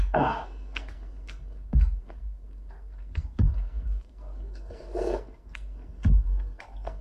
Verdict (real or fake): fake